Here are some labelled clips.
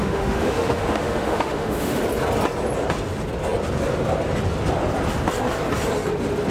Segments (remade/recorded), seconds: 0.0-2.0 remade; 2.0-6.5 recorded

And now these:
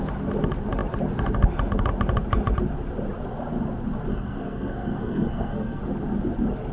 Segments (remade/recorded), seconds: 0.0-4.1 recorded; 4.1-5.8 remade; 5.8-6.7 recorded